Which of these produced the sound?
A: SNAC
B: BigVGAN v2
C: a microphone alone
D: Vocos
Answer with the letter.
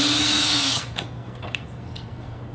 A